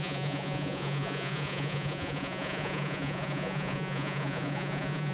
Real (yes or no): no